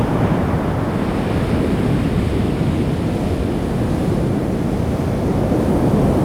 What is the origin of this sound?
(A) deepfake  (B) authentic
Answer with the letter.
B